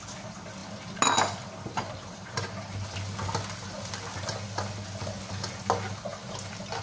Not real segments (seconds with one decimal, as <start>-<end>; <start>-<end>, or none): none